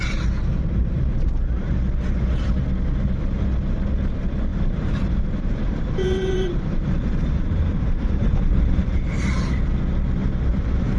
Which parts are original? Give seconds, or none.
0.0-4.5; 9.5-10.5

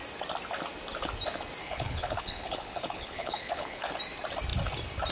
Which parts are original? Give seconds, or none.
0.0-1.6; 3.9-5.1

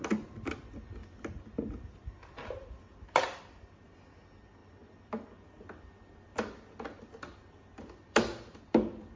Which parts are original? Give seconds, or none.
0.0-9.2

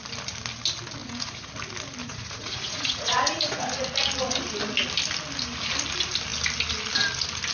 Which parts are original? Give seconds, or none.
0.0-1.0; 1.5-2.0; 3.7-7.5

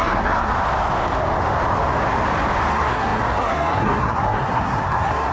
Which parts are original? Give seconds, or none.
0.5-2.7